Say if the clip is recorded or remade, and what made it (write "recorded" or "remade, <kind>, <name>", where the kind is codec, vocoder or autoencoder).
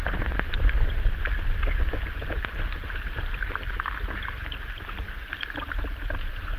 recorded